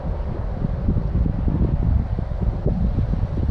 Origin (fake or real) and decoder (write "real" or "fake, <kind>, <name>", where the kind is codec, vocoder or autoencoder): real